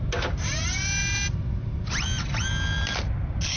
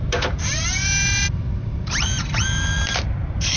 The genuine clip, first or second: first